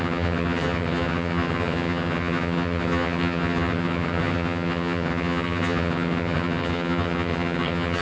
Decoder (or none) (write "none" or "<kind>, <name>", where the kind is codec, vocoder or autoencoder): vocoder, HiFi-GAN